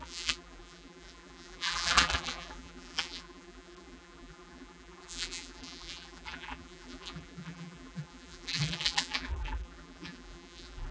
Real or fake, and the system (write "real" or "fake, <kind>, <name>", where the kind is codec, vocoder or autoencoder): fake, vocoder, BigVGAN v2